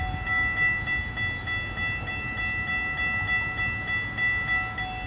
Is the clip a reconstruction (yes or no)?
no